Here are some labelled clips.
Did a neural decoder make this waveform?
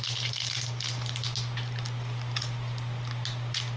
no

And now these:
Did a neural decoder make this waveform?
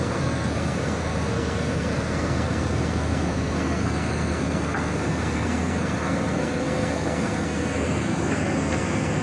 yes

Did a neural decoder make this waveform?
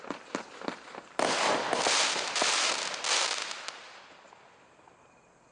no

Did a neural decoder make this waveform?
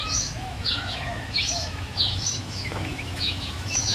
yes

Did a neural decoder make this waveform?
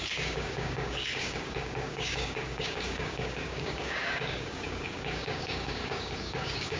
yes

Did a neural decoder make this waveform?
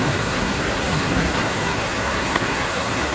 yes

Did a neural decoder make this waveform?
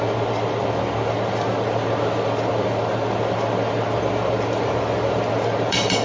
yes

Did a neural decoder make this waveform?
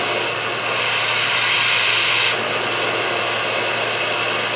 no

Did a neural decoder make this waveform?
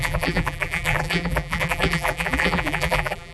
yes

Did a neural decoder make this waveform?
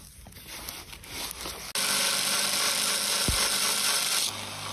no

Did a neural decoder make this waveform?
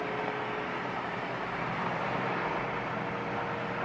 no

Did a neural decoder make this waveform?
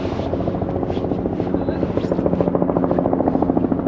no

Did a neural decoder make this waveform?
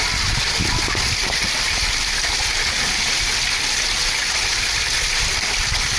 no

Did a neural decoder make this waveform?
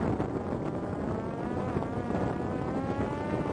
no